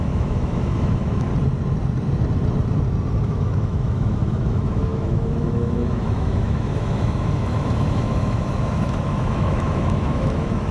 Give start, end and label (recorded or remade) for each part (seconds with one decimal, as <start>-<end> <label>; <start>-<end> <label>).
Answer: 0.0-1.3 remade; 1.3-3.2 recorded; 3.2-10.7 remade